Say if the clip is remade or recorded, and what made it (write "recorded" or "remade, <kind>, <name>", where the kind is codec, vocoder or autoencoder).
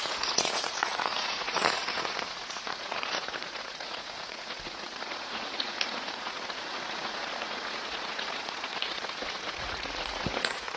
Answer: remade, vocoder, Vocos